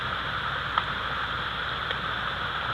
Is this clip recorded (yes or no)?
yes